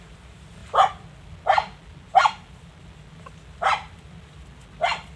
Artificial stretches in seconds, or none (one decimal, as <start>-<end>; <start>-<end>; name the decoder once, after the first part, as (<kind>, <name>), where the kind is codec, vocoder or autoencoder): none